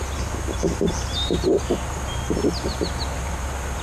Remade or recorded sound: recorded